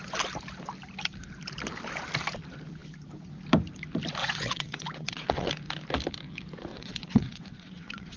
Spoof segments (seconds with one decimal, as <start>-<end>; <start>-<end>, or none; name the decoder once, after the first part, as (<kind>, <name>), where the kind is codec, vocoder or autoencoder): 4.2-5.5 (vocoder, WaveNeXt); 6.7-8.2

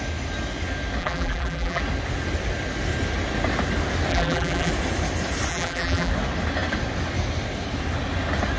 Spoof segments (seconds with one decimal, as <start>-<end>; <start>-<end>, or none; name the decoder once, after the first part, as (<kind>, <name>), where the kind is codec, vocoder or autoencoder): 1.0-1.8 (vocoder, BigVGAN v2); 4.1-4.7; 5.5-6.1

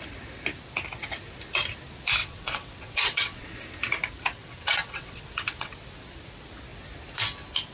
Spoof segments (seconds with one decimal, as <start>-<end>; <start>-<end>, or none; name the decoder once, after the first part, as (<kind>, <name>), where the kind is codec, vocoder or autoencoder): 2.2-3.5 (vocoder, WaveNeXt); 4.4-5.7

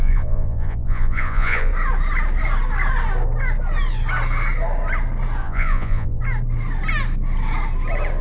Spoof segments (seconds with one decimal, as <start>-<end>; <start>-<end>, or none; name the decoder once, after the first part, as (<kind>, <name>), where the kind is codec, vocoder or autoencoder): 0.0-1.7 (vocoder, Vocos); 5.4-6.2

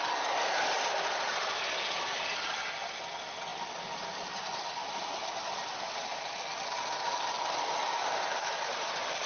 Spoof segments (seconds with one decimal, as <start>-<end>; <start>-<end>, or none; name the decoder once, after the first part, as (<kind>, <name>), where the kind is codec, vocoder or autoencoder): none

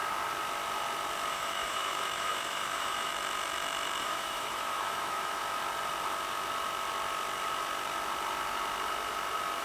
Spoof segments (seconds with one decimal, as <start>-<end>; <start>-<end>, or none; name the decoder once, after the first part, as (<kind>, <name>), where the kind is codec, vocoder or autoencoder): 1.3-3.1 (autoencoder, DAC-VAE); 4.0-5.4

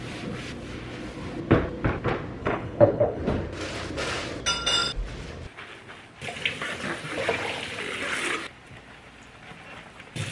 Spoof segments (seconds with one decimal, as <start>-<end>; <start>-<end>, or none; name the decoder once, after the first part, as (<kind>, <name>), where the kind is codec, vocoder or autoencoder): 2.4-3.2 (codec, HILCodec)